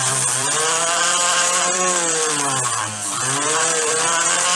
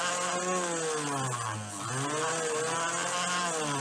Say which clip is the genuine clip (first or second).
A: second